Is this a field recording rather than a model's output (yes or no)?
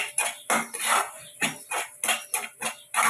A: yes